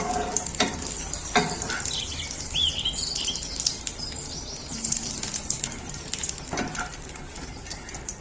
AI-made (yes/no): no